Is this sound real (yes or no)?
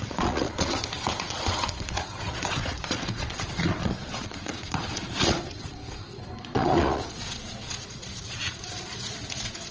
no